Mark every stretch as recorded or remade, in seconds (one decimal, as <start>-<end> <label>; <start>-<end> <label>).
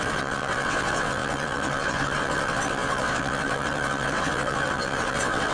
0.0-5.5 remade